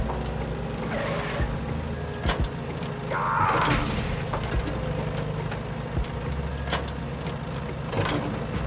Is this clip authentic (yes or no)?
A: yes